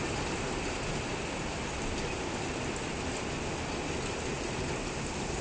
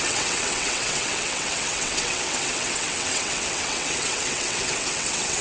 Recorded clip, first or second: first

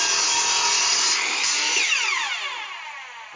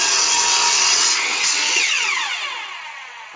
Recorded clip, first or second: first